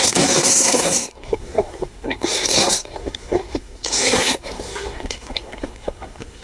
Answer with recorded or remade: remade